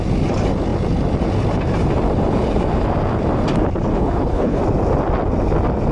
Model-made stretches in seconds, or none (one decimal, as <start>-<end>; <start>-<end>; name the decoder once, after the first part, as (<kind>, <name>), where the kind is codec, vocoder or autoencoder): 3.9-4.6 (codec, HILCodec)